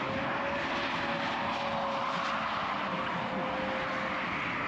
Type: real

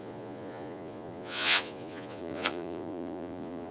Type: fake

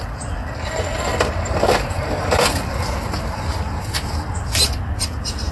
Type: real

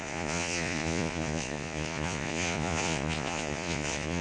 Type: fake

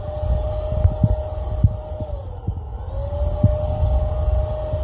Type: real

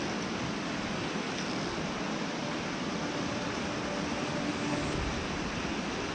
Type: real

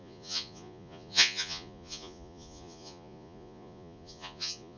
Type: fake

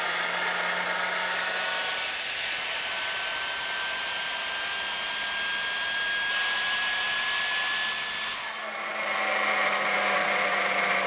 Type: real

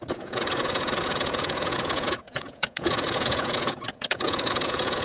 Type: fake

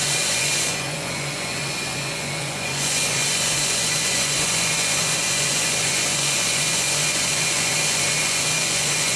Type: fake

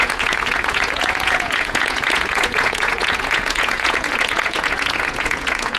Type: fake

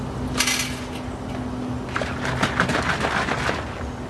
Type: real